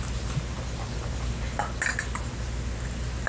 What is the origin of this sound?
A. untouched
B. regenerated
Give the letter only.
A